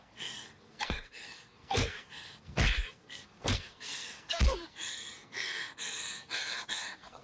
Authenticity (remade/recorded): remade